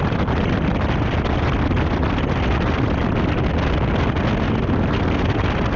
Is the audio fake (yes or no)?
no